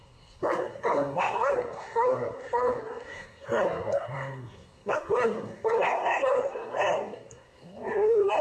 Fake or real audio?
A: fake